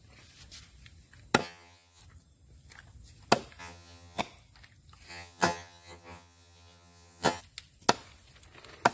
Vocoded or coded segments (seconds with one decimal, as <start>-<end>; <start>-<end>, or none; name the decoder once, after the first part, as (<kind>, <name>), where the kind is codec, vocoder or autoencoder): 1.4-2.0 (vocoder, HiFi-GAN); 3.6-4.2; 5.1-7.4